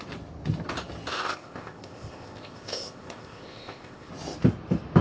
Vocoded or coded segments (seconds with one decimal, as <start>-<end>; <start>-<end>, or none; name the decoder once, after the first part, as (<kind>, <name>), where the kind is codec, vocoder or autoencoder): 1.1-4.1 (codec, ZipCodec)